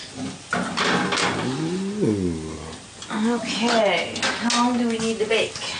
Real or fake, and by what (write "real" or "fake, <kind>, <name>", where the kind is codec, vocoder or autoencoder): real